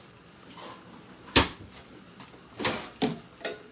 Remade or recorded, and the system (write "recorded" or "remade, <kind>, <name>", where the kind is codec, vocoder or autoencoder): recorded